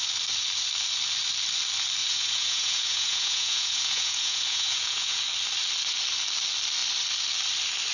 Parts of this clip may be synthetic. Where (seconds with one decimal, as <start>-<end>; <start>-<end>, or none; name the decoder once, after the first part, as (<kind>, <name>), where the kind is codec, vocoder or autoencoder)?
2.0-5.2 (vocoder, Vocos)